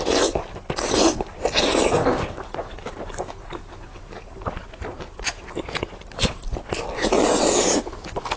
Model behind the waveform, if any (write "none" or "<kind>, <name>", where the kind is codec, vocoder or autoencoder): none